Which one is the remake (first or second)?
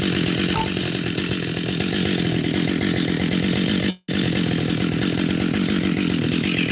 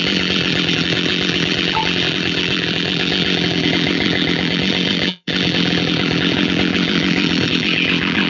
second